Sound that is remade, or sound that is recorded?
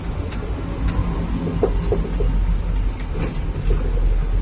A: recorded